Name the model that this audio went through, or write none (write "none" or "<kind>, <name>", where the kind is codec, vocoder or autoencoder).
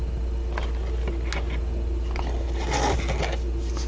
none